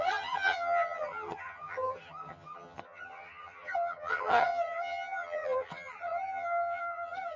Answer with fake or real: fake